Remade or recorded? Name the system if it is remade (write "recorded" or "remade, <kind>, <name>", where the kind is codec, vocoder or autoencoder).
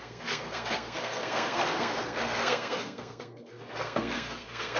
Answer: remade, codec, SNAC